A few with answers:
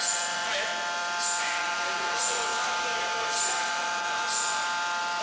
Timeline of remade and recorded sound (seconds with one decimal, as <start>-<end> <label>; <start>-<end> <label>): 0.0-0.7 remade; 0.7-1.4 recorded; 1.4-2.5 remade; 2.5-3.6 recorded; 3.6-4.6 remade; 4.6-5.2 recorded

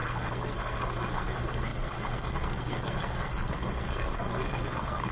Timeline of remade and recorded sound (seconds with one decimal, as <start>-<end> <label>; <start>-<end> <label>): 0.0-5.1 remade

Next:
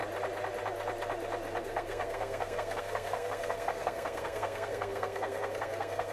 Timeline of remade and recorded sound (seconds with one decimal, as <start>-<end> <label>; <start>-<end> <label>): 0.0-1.6 recorded; 1.6-6.1 remade

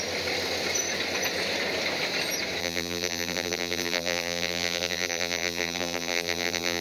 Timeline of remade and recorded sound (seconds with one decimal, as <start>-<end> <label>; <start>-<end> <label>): 0.0-2.6 recorded; 2.6-6.8 remade